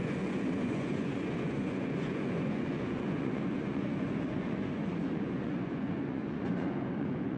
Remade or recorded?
remade